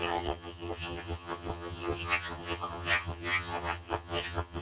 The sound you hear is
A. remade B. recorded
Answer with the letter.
A